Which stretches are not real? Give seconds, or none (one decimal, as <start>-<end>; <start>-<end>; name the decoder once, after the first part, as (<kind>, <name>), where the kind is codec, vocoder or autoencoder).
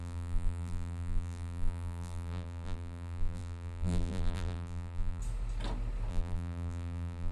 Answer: 0.0-5.2 (vocoder, BigVGAN v2); 6.1-7.3